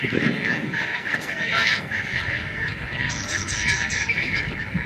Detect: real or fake fake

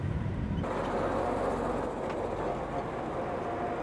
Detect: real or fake real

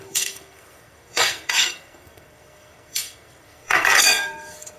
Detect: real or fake fake